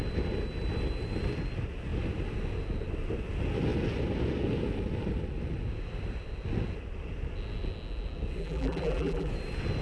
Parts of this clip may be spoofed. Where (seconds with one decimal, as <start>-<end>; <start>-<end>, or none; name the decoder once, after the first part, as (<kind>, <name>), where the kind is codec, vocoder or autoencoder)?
8.4-9.3 (vocoder, BigVGAN v2)